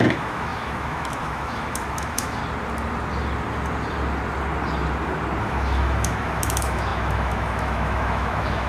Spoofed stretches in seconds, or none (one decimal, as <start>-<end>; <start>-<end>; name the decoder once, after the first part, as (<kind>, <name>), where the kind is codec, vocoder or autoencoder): 0.0-2.4 (autoencoder, DAC-VAE); 5.4-8.7